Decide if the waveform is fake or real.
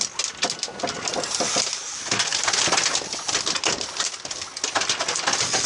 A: real